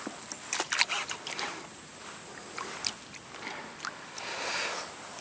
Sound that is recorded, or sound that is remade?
recorded